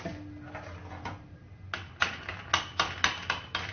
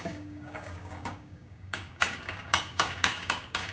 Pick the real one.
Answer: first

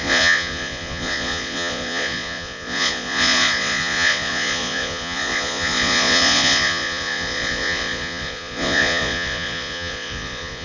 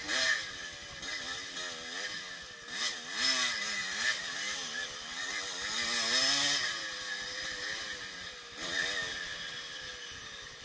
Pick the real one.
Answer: second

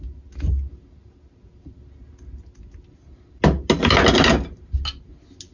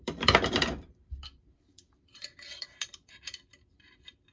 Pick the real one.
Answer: first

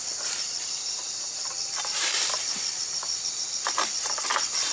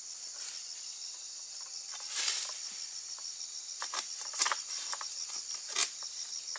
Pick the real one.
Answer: second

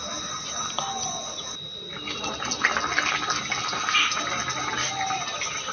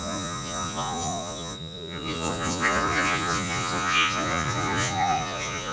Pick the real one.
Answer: first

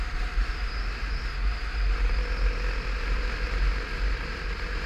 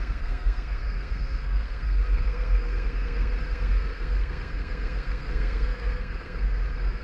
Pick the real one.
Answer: first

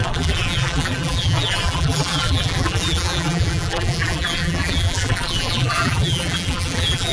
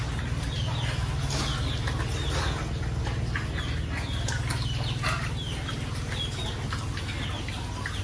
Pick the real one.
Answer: second